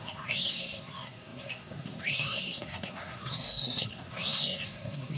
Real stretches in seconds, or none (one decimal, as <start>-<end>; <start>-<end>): none